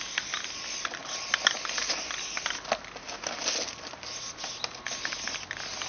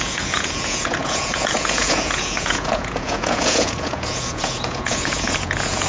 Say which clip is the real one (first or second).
first